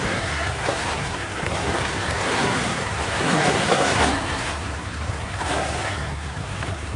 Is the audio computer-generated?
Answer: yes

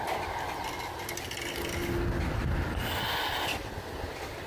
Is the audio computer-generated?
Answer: no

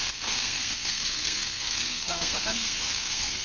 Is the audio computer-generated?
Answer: yes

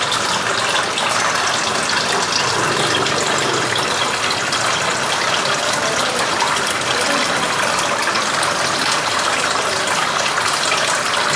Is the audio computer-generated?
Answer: no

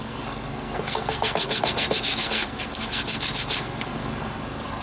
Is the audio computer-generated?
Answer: yes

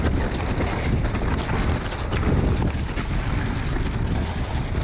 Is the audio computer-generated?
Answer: no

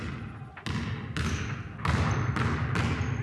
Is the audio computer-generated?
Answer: no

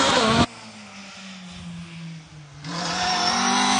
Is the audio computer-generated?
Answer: no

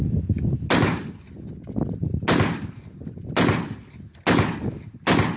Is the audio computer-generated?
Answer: no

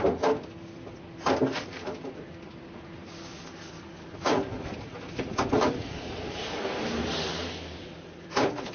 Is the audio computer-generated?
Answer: no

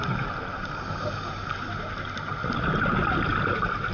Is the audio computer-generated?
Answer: no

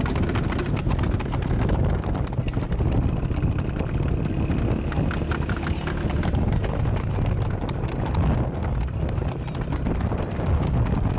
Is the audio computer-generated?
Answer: no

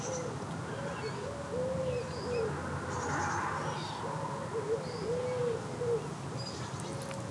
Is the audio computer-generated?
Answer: no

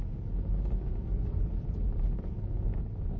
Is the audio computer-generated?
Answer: no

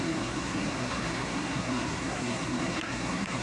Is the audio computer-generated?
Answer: yes